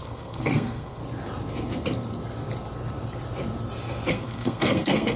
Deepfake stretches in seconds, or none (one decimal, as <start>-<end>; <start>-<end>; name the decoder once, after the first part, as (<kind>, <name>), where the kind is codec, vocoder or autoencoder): 0.0-1.0 (codec, SNAC); 4.1-5.2